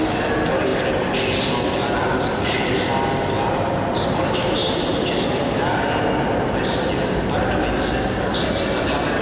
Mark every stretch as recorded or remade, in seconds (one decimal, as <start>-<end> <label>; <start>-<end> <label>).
0.0-9.2 recorded